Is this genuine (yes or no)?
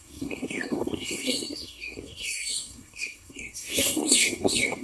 no